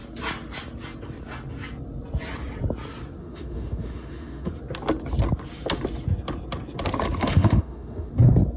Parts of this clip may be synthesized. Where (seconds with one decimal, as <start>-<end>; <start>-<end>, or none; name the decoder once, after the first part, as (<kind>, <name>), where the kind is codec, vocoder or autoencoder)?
3.2-4.5 (autoencoder, DAC-VAE); 7.2-8.1